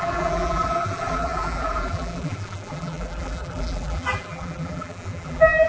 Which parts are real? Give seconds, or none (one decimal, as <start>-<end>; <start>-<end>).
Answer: none